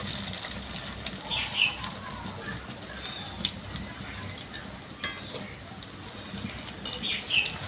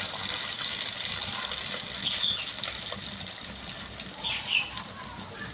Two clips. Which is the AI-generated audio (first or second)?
second